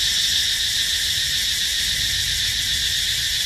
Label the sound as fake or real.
real